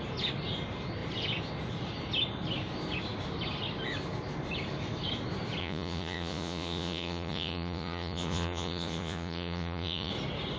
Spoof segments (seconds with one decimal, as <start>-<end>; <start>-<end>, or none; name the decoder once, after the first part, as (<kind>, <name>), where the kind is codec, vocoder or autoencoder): 5.6-10.1 (vocoder, Vocos)

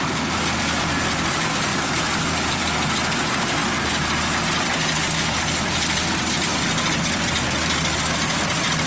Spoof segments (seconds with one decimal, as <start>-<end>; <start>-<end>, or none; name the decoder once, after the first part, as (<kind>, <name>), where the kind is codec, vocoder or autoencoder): 0.0-3.6 (vocoder, BigVGAN v2); 4.6-6.5; 7.0-8.9

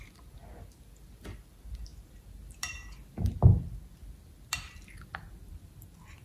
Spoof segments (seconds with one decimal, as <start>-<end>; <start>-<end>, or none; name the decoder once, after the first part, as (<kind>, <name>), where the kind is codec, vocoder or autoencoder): none

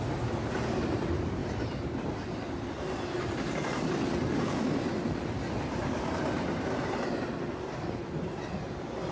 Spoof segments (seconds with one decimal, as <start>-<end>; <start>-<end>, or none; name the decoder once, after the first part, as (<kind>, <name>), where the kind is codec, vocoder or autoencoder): none

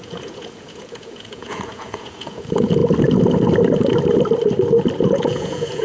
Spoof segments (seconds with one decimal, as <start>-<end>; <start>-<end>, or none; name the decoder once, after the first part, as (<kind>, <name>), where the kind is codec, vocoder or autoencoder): 0.0-2.8 (vocoder, Vocos); 5.0-5.8

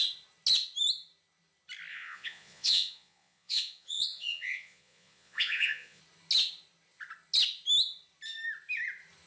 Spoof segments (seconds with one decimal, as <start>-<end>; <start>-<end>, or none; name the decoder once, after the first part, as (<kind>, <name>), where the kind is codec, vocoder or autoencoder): 1.9-6.0 (vocoder, Vocos)

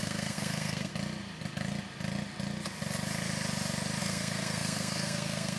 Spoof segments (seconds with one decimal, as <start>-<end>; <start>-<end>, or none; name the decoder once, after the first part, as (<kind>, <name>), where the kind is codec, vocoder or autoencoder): 0.0-0.9 (codec, SNAC); 4.0-5.6

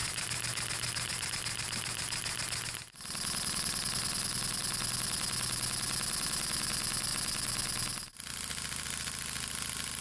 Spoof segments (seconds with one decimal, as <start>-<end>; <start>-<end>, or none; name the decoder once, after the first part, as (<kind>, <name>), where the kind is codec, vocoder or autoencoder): none